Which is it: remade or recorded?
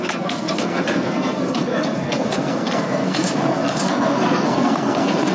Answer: remade